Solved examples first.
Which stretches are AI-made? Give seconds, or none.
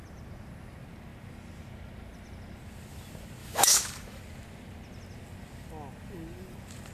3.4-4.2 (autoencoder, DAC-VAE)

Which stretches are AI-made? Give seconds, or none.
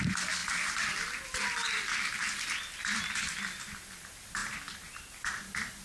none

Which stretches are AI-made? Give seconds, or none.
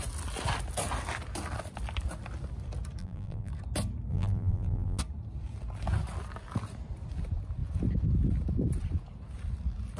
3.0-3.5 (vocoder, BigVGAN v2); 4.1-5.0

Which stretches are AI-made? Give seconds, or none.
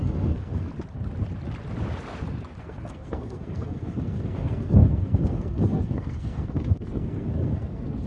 0.0-0.7 (codec, SNAC); 2.6-8.1